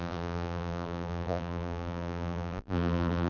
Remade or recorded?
remade